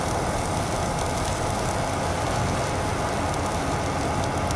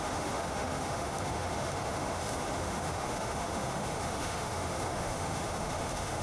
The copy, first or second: second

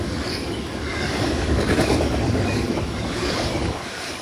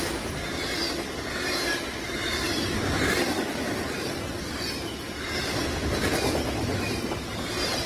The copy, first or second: first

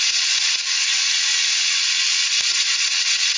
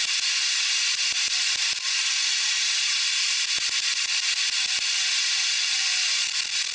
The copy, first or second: first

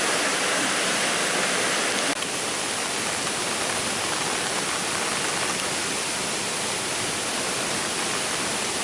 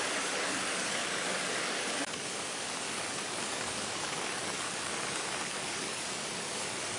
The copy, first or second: second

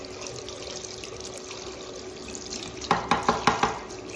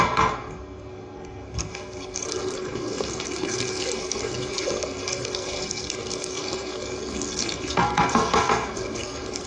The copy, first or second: second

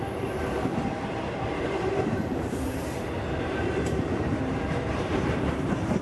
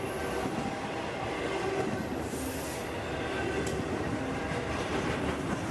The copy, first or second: first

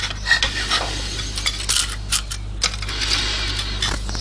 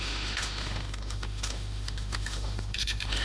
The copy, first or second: second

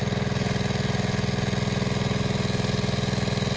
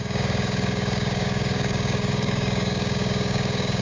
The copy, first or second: second